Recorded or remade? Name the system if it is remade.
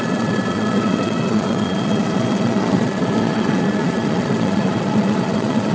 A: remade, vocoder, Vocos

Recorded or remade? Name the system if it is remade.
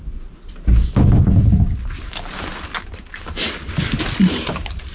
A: recorded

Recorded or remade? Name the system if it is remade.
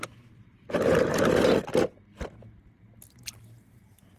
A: recorded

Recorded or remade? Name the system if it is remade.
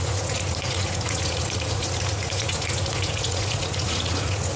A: remade, vocoder, Vocos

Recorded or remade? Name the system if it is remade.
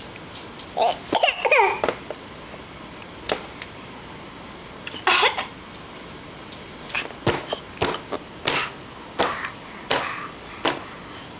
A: recorded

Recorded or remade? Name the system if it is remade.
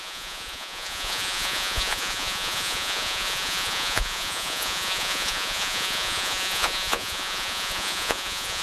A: remade, vocoder, Vocos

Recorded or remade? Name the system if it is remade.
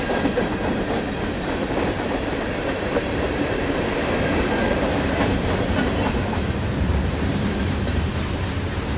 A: remade, vocoder, BigVGAN v2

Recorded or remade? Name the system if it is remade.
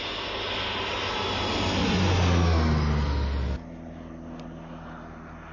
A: recorded